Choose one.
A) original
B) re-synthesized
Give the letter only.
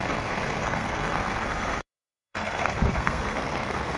B